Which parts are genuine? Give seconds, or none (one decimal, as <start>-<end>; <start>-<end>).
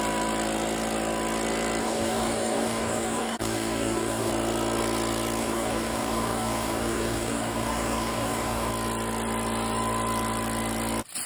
0.0-1.8; 4.3-5.4; 8.7-11.3